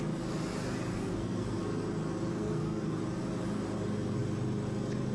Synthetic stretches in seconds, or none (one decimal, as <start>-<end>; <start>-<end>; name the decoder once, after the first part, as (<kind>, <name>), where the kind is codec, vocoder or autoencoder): 0.9-1.6 (codec, SNAC); 2.3-3.0